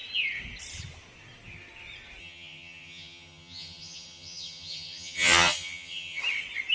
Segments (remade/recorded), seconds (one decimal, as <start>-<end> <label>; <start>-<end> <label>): 0.0-2.2 recorded; 2.2-6.2 remade; 6.2-6.7 recorded